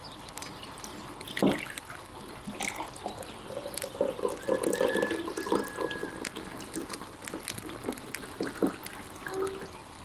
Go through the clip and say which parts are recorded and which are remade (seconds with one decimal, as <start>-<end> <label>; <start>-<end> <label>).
0.0-10.0 recorded